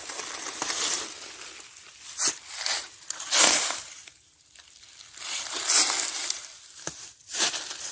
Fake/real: real